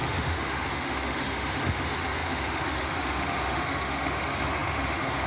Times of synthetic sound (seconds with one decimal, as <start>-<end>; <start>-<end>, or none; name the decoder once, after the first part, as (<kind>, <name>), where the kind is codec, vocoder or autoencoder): 0.0-5.3 (autoencoder, DAC-VAE)